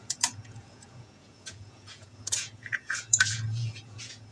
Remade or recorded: remade